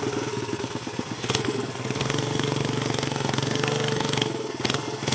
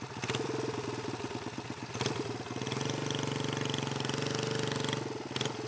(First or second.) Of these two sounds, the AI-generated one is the first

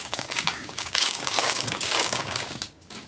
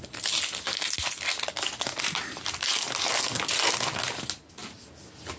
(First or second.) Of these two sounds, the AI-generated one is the first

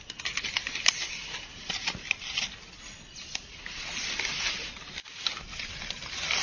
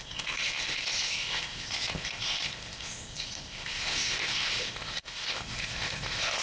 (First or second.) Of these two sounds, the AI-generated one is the second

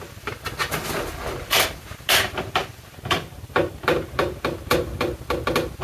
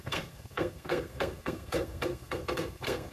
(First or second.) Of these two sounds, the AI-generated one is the second